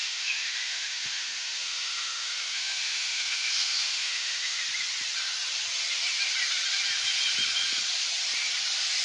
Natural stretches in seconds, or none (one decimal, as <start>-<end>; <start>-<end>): 4.6-9.0